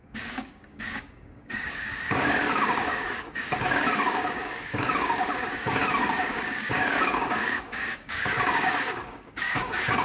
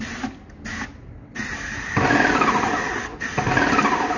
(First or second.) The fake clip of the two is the first